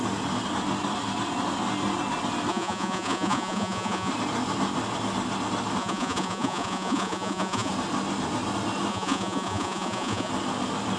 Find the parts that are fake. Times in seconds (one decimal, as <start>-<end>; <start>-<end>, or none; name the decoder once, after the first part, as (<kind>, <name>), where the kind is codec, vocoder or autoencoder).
2.5-4.1 (vocoder, Vocos); 5.8-7.7; 8.9-10.3